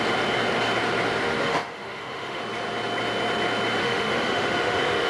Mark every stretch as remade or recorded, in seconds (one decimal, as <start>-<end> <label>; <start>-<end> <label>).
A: 0.0-1.2 recorded; 1.2-2.4 remade; 2.4-3.8 recorded; 3.8-5.1 remade